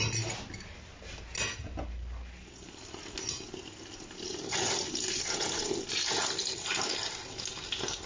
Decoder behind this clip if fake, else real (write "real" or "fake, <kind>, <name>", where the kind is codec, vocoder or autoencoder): real